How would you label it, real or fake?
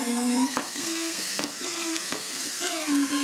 fake